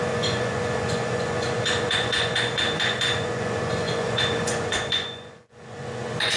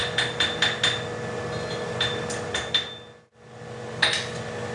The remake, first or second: first